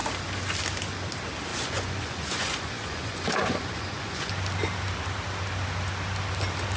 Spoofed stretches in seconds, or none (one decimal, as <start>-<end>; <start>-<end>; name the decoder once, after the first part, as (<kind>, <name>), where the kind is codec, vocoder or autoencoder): 1.5-4.3 (vocoder, Vocos)